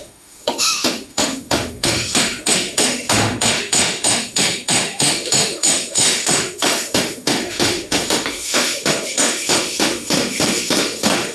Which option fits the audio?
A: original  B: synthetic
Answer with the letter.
B